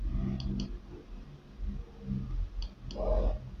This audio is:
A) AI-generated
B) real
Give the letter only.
B